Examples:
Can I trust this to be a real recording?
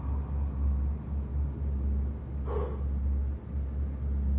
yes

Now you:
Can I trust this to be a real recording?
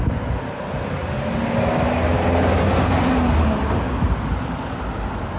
yes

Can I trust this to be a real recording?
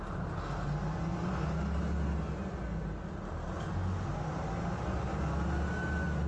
yes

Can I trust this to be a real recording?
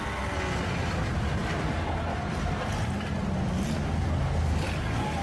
yes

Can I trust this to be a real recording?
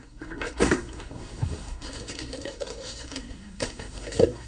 no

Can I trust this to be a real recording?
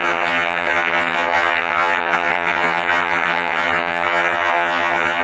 no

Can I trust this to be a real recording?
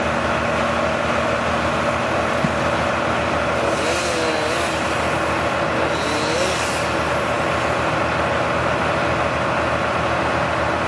yes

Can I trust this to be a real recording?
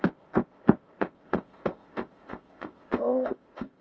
no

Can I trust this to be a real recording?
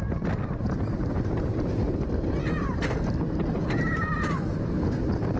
yes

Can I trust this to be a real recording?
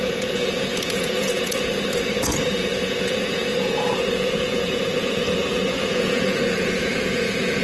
no